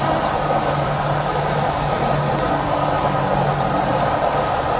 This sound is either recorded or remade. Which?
recorded